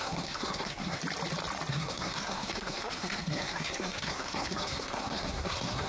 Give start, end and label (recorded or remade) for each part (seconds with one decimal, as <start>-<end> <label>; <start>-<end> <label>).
0.0-1.0 remade; 1.0-1.7 recorded; 1.7-5.9 remade